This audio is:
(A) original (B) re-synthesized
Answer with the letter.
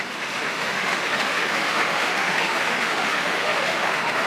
B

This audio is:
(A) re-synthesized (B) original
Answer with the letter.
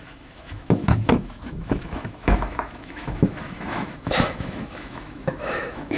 A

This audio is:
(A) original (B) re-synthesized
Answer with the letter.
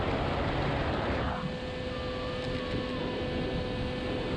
A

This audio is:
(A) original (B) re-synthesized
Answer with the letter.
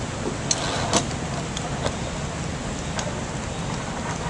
A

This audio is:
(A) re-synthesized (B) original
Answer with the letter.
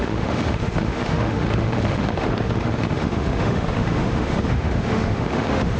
A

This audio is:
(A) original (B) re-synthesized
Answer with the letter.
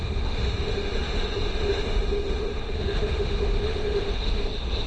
B